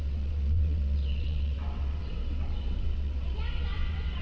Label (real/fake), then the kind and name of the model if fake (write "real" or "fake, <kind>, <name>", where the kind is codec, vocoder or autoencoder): fake, vocoder, WaveNeXt